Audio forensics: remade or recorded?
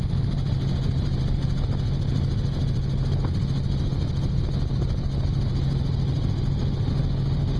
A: recorded